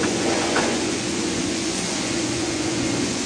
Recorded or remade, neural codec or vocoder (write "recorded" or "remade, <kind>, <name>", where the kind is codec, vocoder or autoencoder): remade, vocoder, Vocos